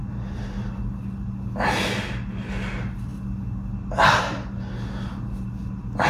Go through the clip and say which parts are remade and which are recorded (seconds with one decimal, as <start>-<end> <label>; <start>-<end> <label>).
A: 0.0-6.1 recorded